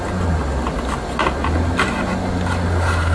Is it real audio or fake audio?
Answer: real